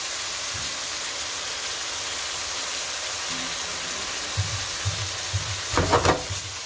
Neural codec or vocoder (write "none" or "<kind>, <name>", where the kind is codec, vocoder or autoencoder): none